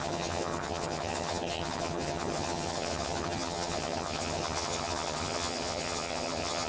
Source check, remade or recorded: remade